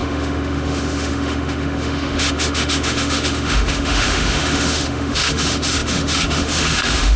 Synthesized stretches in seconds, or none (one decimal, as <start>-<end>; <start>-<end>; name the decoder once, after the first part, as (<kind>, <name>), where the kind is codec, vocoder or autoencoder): 0.0-7.2 (autoencoder, DAC-VAE)